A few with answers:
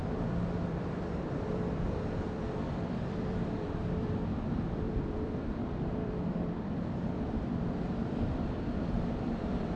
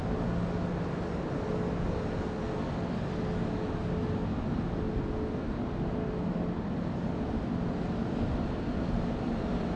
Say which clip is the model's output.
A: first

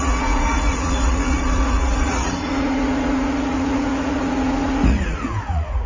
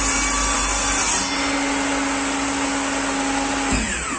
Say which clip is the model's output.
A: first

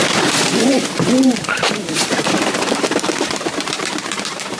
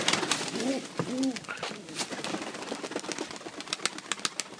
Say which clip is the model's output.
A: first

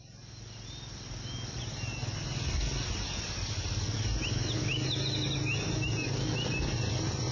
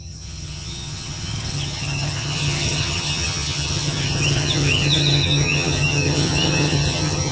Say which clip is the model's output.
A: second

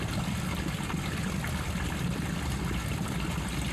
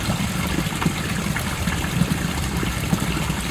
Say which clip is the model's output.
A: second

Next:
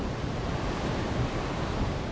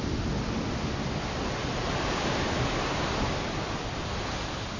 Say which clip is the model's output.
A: first